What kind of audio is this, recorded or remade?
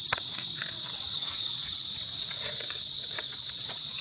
remade